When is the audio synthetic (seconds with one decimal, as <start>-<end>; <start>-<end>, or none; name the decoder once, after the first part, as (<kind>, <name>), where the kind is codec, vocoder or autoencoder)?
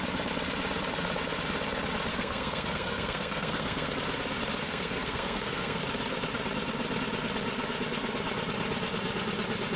2.1-3.9 (codec, SNAC); 4.6-5.8